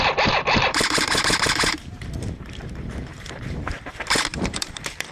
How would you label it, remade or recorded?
remade